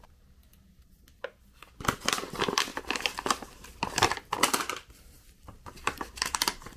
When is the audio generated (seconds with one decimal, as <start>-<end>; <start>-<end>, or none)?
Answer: 2.7-6.8